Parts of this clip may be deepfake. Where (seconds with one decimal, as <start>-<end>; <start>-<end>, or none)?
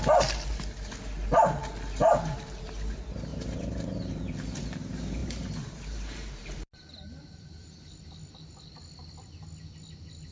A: 3.3-4.1; 5.2-7.9